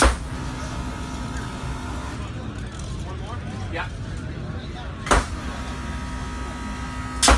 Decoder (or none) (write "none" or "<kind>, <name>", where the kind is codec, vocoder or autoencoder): none